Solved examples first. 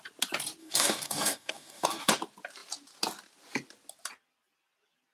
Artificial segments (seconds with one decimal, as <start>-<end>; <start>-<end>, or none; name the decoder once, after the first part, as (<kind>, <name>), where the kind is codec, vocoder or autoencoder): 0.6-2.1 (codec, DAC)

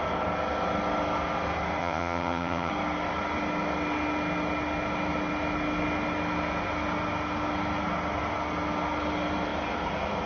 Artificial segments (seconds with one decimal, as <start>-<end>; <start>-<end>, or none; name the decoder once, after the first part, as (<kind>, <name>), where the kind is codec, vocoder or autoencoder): 1.8-2.7 (vocoder, HiFi-GAN)

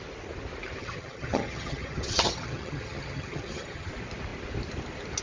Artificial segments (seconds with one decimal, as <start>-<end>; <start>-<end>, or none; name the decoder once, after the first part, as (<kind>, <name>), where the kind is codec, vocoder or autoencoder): 0.8-3.9 (vocoder, HiFi-GAN)

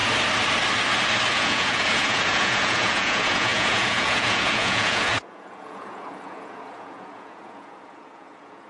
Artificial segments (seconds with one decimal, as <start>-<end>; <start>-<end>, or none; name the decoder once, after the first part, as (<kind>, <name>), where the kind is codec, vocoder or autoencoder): 1.3-8.7 (vocoder, Vocos)

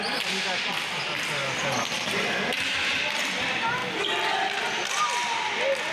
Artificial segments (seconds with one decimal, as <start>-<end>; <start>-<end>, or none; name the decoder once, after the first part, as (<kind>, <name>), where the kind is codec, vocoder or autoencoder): none

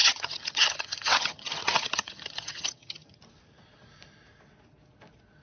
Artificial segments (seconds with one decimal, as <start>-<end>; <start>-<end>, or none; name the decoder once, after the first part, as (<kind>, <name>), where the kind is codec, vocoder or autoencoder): 0.0-3.2 (vocoder, HiFi-GAN)

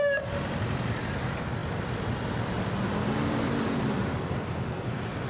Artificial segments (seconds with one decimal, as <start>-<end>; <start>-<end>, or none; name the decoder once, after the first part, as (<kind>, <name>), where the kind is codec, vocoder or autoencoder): 0.0-5.3 (vocoder, BigVGAN v2)

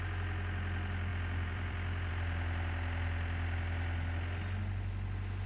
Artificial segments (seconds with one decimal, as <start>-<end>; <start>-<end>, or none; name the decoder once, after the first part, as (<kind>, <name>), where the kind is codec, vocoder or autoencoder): 1.1-2.1 (vocoder, BigVGAN v2)